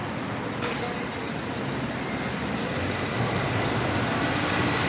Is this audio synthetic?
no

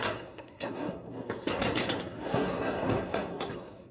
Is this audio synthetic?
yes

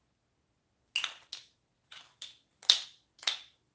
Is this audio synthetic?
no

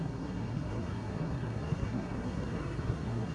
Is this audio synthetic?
yes